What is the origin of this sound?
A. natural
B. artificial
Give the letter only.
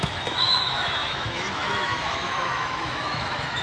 B